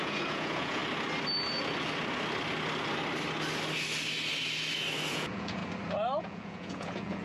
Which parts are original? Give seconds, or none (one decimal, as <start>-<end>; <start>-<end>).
0.8-5.1; 5.6-6.2